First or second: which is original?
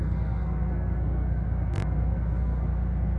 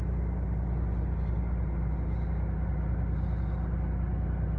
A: second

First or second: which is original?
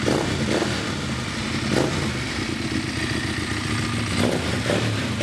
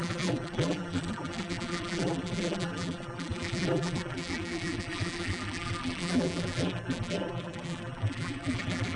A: first